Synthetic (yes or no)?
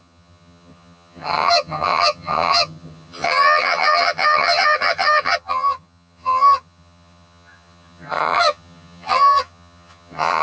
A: yes